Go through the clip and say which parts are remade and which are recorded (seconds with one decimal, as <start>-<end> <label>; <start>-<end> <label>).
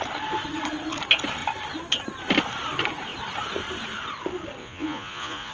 0.0-4.6 recorded; 4.6-5.5 remade